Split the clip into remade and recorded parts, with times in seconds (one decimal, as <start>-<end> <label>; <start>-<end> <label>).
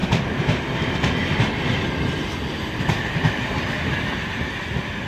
0.0-5.1 recorded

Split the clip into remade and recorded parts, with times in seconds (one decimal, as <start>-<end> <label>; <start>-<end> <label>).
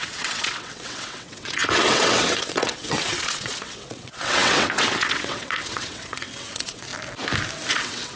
0.0-6.9 remade; 6.9-7.7 recorded; 7.7-8.2 remade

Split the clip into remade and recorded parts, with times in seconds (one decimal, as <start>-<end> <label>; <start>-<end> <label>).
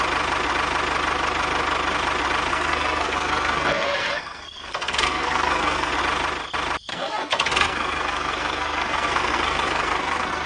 0.0-2.5 recorded; 2.5-5.9 remade; 5.9-6.9 recorded; 6.9-10.5 remade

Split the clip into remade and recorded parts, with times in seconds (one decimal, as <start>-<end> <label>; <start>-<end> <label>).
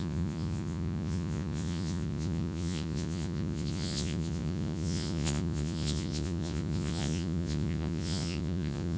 0.0-9.0 remade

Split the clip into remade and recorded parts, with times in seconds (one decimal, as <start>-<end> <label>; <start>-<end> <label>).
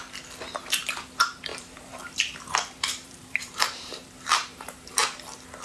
0.0-1.5 recorded; 1.5-4.9 remade; 4.9-5.6 recorded